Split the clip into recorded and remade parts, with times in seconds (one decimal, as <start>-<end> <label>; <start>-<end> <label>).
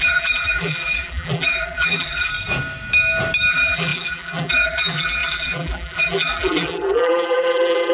0.0-2.3 remade; 2.3-3.5 recorded; 3.5-7.9 remade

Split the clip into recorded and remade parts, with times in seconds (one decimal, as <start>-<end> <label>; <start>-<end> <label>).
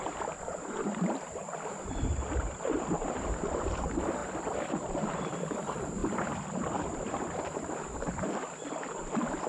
0.0-1.4 remade; 1.4-2.5 recorded; 2.5-9.5 remade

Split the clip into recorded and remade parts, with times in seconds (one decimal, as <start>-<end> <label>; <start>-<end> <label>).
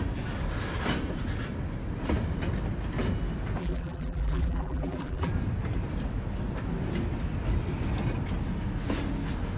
0.0-3.6 recorded; 3.6-5.3 remade; 5.3-9.6 recorded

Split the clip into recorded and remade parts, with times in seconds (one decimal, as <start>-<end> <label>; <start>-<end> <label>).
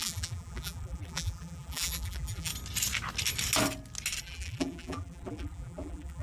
0.0-2.5 remade; 2.5-4.2 recorded; 4.2-6.2 remade